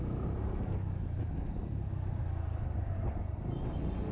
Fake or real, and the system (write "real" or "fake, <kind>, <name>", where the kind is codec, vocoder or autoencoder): real